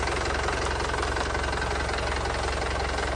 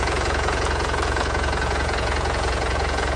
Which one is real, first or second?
first